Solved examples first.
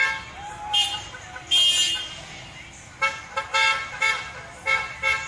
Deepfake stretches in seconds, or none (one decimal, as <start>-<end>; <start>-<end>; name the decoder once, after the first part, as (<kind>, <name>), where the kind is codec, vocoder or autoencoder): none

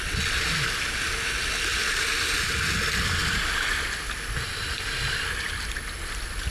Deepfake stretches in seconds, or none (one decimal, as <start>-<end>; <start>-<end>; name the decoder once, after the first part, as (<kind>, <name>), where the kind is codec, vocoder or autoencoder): none

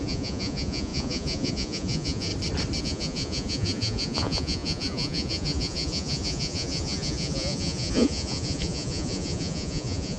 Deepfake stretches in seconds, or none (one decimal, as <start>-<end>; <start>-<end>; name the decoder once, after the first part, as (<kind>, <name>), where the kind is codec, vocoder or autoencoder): 0.0-2.3 (vocoder, Vocos); 2.8-10.2

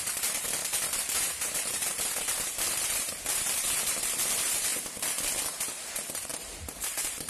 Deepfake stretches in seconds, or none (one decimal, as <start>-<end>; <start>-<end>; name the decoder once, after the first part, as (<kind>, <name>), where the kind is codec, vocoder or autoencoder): 0.0-4.7 (vocoder, BigVGAN v2); 5.4-7.3

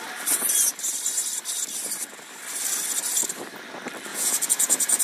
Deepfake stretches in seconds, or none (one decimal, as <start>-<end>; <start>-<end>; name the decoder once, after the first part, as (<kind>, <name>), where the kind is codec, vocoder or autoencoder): 4.1-5.0 (vocoder, Vocos)